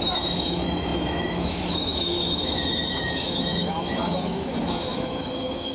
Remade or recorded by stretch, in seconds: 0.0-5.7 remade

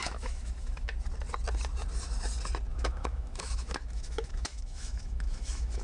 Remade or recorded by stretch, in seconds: 0.0-0.9 remade; 0.9-2.7 recorded; 2.7-5.8 remade

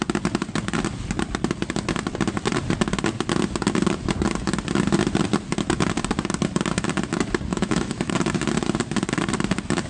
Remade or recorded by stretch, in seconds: 0.0-7.5 recorded; 7.5-8.1 remade; 8.1-9.9 recorded

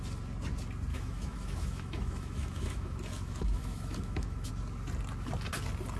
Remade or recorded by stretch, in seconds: 0.0-0.9 recorded; 0.9-4.5 remade; 4.5-6.0 recorded

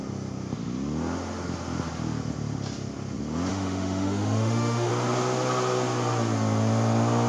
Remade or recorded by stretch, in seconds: 0.0-3.5 recorded; 3.5-4.9 remade; 4.9-7.3 recorded

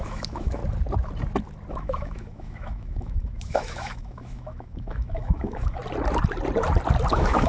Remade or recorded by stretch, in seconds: 0.0-0.6 remade; 0.6-1.7 recorded; 1.7-5.8 remade; 5.8-7.1 recorded; 7.1-7.5 remade

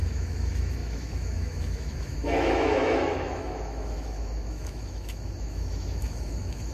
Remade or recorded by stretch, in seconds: 0.0-6.7 remade